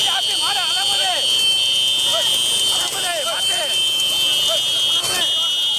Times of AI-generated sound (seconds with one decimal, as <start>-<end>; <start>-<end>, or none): none